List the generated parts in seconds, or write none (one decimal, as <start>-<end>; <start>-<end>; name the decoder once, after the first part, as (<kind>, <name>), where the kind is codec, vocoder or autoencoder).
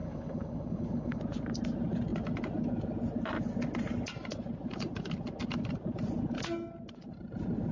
0.0-1.2 (codec, HILCodec)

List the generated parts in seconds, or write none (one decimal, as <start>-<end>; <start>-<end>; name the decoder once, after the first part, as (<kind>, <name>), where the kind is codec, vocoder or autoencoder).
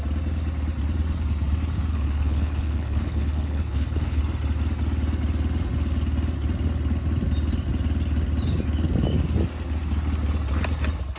1.9-4.2 (codec, HILCodec)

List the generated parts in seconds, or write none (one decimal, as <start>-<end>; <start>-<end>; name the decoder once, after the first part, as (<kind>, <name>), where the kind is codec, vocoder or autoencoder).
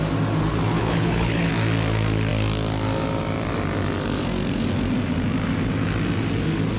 0.8-1.5 (codec, HILCodec)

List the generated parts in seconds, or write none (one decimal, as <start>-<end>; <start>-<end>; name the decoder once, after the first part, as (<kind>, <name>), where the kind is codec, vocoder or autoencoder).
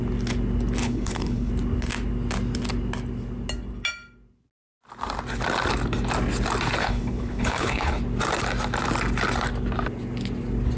0.8-1.5 (codec, HILCodec); 6.8-8.0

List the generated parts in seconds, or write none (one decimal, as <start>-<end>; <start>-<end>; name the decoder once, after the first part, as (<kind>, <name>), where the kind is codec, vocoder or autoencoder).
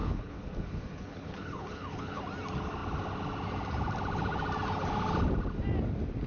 0.0-2.2 (codec, HILCodec)